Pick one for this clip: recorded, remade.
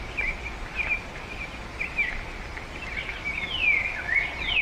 recorded